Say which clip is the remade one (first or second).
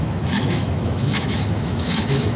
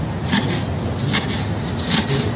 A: first